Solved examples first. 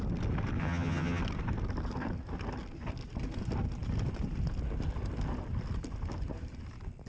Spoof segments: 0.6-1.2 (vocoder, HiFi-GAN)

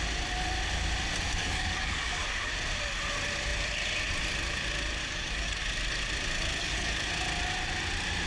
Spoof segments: 1.4-2.5 (codec, DAC); 5.0-5.6; 6.6-7.1

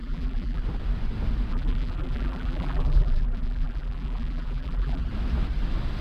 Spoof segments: 0.0-0.6 (vocoder, BigVGAN v2); 1.5-5.0

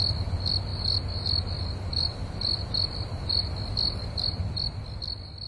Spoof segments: none

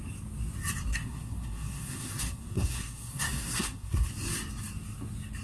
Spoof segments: 0.9-4.1 (codec, SNAC)

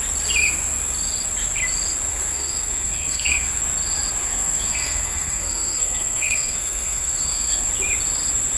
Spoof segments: 2.1-3.6 (codec, SNAC); 4.2-7.7

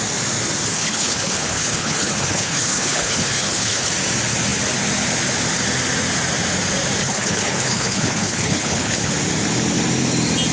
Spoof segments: 0.7-3.9 (codec, HILCodec); 7.0-9.1

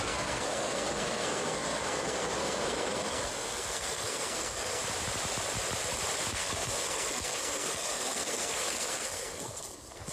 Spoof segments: 0.0-4.8 (codec, SNAC); 6.3-10.1